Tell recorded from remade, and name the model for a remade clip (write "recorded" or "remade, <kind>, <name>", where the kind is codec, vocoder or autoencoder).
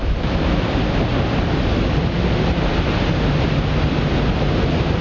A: recorded